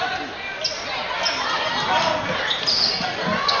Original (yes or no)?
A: yes